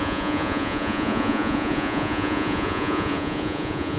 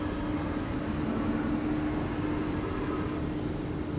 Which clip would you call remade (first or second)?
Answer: first